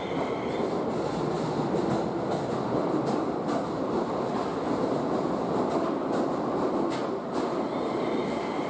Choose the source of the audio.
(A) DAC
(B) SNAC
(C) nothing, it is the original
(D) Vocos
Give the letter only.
C